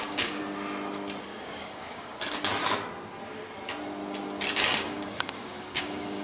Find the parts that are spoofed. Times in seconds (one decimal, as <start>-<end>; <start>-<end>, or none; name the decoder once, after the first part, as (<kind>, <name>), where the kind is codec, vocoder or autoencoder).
0.0-0.4 (codec, DAC); 1.2-2.1; 4.8-6.2